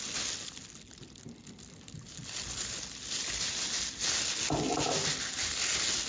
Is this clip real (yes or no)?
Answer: yes